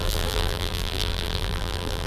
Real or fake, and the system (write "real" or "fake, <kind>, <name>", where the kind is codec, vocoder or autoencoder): fake, vocoder, BigVGAN v2